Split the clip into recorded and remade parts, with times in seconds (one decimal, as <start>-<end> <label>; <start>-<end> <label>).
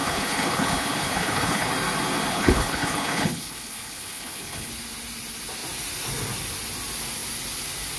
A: 0.0-1.7 remade; 1.7-2.3 recorded; 2.3-4.7 remade; 4.7-8.0 recorded